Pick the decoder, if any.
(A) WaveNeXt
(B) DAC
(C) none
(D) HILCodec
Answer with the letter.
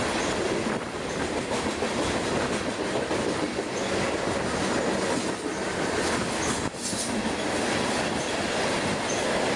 C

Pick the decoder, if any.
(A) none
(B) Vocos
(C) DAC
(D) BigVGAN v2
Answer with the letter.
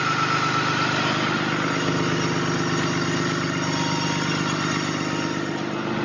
A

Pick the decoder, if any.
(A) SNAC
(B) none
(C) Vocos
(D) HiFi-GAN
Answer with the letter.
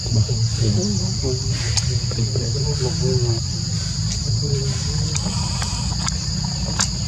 B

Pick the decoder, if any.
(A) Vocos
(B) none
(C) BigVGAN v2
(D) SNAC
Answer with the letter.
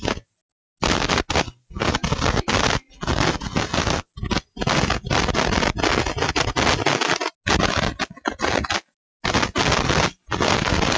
B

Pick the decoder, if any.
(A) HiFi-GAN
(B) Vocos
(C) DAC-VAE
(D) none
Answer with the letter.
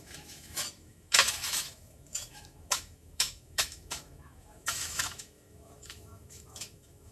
C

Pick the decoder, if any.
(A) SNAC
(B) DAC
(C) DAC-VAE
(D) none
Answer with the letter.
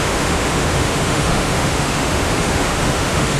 C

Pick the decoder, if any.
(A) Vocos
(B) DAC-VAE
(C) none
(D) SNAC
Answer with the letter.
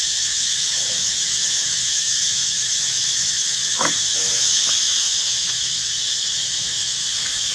B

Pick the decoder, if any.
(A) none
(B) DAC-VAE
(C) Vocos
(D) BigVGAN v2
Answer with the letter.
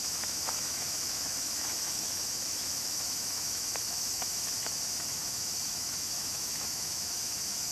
B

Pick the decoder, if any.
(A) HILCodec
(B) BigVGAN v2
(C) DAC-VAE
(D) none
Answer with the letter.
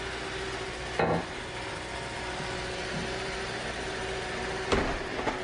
D